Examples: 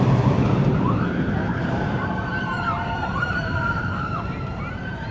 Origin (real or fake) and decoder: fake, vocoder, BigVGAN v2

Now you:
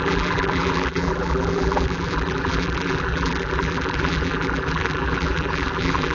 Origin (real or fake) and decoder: fake, vocoder, BigVGAN v2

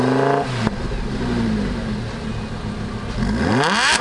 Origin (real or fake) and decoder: real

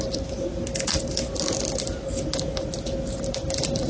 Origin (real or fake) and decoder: real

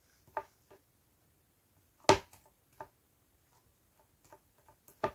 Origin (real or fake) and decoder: real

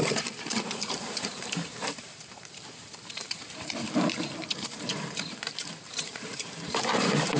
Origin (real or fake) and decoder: fake, vocoder, BigVGAN v2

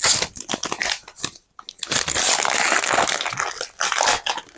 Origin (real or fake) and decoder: real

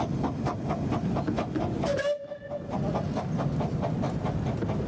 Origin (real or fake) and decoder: real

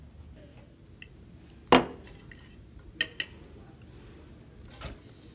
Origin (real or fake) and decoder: real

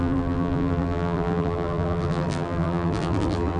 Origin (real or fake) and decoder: fake, vocoder, BigVGAN v2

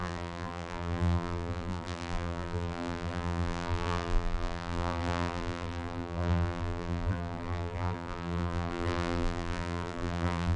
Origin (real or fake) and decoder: fake, vocoder, BigVGAN v2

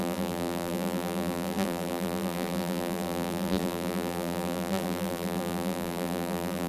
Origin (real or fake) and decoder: fake, vocoder, BigVGAN v2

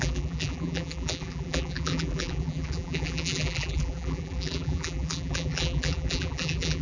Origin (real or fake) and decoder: fake, vocoder, BigVGAN v2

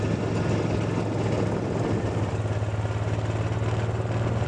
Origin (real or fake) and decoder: real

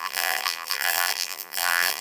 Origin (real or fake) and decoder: fake, vocoder, BigVGAN v2